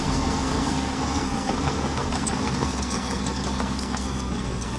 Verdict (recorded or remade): remade